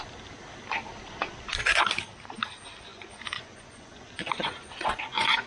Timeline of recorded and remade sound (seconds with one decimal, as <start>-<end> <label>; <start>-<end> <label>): 0.0-2.9 recorded; 2.9-5.5 remade